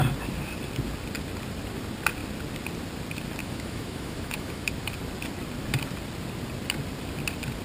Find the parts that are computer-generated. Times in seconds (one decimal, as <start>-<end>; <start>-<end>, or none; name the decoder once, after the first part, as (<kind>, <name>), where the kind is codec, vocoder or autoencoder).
3.4-4.7 (autoencoder, DAC-VAE)